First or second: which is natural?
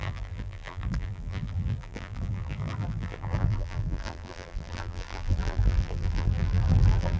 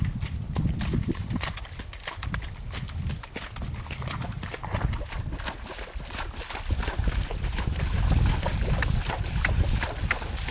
second